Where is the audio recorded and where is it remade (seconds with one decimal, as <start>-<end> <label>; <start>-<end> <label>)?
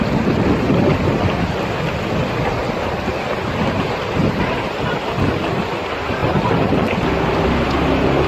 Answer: 0.0-8.3 recorded